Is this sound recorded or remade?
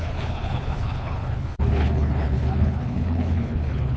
remade